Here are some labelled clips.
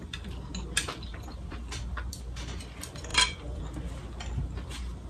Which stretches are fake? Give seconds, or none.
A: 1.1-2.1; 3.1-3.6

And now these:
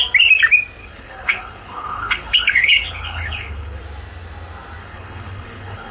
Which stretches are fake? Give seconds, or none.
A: 0.8-3.8; 4.8-5.9

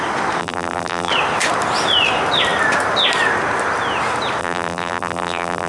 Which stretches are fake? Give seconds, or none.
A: 0.4-1.1; 4.4-5.7

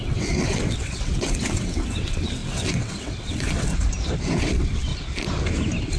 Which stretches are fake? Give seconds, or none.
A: 0.0-3.7; 4.4-4.9